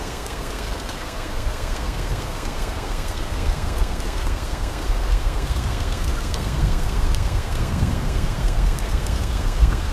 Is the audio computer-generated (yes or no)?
yes